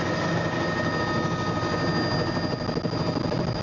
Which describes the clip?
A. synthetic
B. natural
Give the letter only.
B